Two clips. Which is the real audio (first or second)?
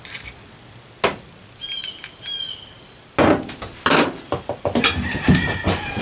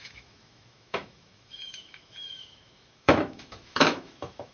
first